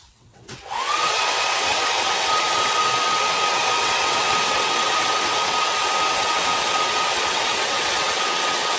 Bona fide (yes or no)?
no